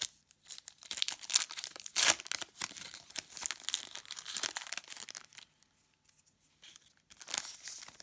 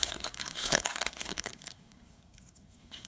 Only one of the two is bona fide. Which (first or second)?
first